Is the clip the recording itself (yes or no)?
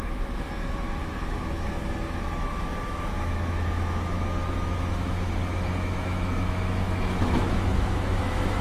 no